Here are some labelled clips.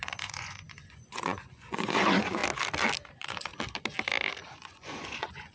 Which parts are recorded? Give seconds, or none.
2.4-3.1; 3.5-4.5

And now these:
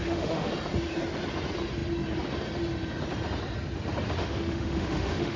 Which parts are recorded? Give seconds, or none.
0.5-4.2

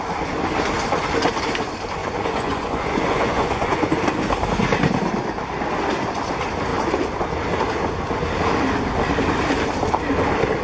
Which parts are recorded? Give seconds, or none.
0.0-2.0; 3.9-10.6

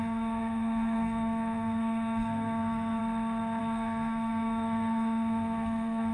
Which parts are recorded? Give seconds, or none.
3.0-3.6

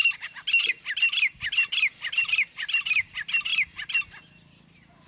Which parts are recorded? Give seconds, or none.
0.7-1.9; 3.0-5.1

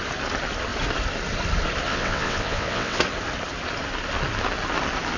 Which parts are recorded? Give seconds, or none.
0.0-1.9; 3.0-5.2

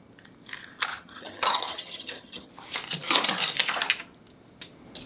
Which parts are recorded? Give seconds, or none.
0.0-0.9; 2.5-5.1